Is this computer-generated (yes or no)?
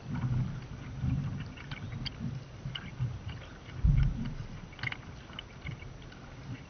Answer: no